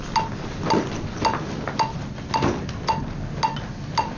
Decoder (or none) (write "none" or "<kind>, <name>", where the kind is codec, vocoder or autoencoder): none